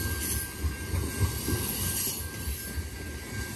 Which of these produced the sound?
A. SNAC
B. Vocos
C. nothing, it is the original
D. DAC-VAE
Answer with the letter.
C